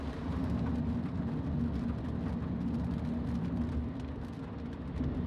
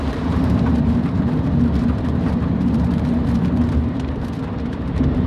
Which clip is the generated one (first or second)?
second